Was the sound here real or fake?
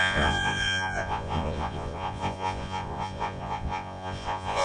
fake